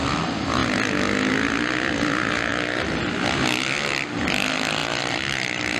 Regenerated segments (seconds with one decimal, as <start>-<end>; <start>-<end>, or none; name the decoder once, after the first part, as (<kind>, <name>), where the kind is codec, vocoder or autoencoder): 2.5-3.0 (vocoder, BigVGAN v2); 4.8-5.8